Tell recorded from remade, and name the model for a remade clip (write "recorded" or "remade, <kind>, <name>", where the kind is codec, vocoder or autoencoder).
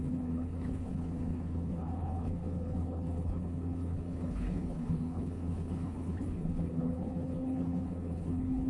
remade, codec, HILCodec